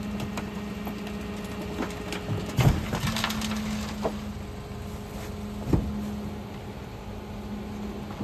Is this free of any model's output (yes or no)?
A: yes